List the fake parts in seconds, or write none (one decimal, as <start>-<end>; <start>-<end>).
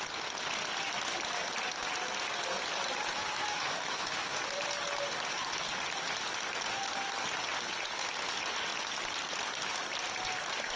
3.1-4.4